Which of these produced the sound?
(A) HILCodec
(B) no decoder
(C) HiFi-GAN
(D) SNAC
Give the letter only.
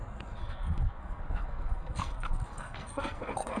D